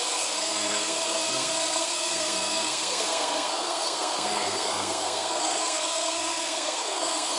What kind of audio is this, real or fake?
fake